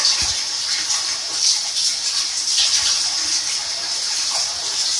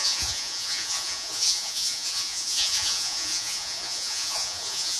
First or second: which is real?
first